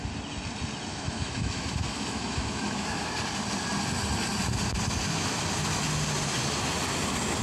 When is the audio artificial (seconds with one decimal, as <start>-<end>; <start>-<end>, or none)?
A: 0.9-3.1